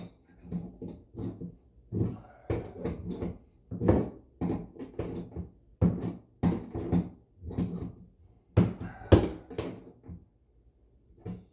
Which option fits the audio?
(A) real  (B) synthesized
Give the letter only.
A